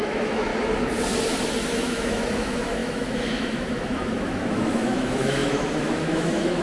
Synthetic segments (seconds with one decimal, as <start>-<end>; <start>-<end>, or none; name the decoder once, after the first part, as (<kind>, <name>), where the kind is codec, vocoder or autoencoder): 0.0-0.5 (autoencoder, DAC-VAE); 1.8-6.6